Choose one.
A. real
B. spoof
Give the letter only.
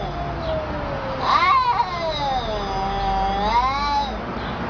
A